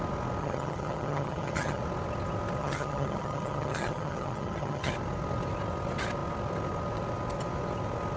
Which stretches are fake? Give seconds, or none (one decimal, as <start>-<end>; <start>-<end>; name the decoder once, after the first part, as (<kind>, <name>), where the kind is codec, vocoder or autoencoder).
0.4-1.8 (vocoder, HiFi-GAN); 2.6-4.9

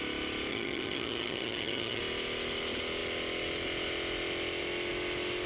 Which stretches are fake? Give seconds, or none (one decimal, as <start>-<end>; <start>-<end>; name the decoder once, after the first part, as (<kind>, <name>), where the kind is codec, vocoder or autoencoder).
0.5-2.0 (vocoder, HiFi-GAN)

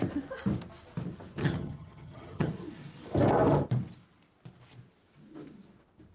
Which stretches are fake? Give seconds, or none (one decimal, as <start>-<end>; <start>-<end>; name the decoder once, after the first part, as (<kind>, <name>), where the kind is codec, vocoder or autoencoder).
1.4-2.5 (vocoder, HiFi-GAN)

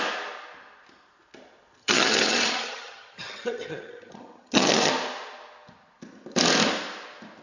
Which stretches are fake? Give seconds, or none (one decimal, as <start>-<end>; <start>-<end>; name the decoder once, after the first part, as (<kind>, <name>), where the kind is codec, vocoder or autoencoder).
1.8-4.9 (vocoder, HiFi-GAN)

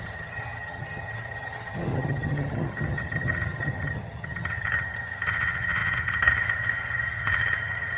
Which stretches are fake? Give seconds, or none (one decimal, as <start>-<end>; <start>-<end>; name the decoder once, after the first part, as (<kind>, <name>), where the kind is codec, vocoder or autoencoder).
0.0-8.0 (vocoder, HiFi-GAN)

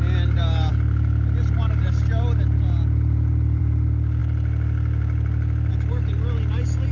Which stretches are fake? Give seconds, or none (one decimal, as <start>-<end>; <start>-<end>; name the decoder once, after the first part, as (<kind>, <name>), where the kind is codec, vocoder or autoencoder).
none

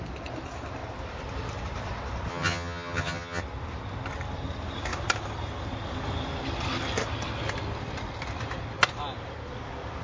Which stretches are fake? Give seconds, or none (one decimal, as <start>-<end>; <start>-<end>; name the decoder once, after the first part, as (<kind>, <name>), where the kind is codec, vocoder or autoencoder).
2.3-3.4 (vocoder, HiFi-GAN)

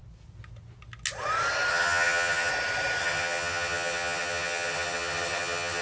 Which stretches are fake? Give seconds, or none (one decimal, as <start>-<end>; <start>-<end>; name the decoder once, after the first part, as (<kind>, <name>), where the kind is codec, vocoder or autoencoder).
1.7-2.5 (vocoder, HiFi-GAN); 3.0-5.8